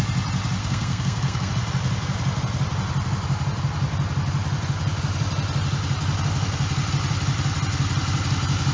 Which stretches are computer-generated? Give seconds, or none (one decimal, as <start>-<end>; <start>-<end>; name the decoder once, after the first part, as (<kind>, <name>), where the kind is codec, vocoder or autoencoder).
0.6-1.5 (codec, SNAC)

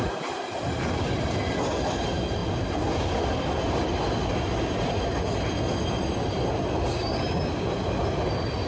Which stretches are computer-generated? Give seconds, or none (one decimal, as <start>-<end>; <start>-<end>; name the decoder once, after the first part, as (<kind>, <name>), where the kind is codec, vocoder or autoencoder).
none

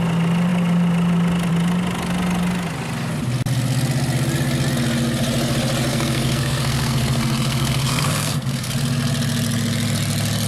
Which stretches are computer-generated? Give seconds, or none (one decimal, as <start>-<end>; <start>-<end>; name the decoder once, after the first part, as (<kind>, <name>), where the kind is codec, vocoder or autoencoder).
5.9-8.7 (codec, SNAC)

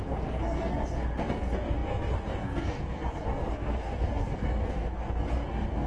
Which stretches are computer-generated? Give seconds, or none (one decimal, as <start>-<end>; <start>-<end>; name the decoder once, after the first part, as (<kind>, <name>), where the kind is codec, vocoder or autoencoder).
0.0-5.9 (codec, SNAC)

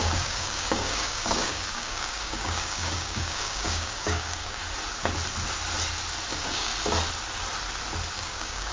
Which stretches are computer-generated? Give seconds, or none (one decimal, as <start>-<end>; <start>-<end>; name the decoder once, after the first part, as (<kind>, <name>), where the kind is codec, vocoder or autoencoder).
0.0-4.6 (codec, DAC); 6.3-6.7; 8.1-8.7